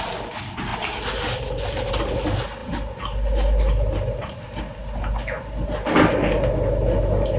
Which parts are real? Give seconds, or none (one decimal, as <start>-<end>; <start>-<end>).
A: 0.0-7.4